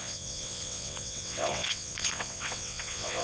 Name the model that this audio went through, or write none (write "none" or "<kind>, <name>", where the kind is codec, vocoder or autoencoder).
vocoder, WaveNeXt